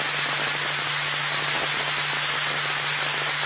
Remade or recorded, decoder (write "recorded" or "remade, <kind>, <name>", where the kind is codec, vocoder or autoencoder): recorded